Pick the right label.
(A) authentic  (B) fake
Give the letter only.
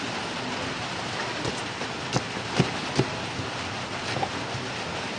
A